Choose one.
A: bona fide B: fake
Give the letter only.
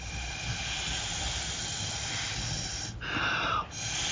A